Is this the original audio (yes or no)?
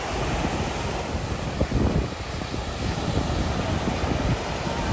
yes